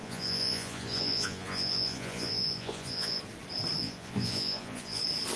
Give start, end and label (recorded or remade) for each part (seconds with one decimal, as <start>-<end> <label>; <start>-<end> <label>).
0.0-3.2 remade; 3.2-3.8 recorded; 3.8-5.0 remade; 5.0-5.4 recorded